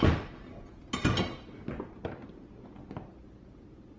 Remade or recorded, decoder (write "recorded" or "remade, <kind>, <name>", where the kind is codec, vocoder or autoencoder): recorded